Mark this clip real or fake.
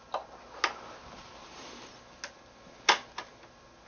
real